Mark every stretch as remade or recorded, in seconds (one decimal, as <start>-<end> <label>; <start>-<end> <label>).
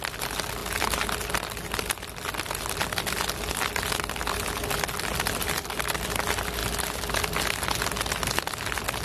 0.0-9.0 recorded